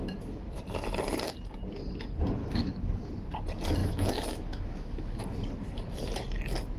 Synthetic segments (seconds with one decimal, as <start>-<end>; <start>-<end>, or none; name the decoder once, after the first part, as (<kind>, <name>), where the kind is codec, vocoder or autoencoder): 0.0-0.6 (autoencoder, DAC-VAE); 2.4-3.1; 3.8-5.2